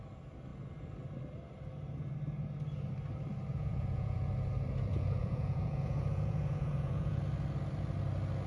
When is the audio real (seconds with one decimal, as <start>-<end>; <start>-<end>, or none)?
0.0-3.5; 4.3-4.9; 7.2-8.5